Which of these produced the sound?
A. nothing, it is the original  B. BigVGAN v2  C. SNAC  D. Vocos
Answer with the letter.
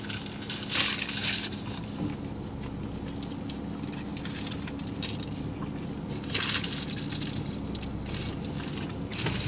A